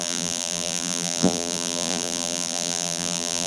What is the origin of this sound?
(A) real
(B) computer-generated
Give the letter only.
B